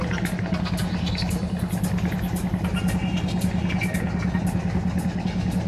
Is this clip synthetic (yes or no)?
no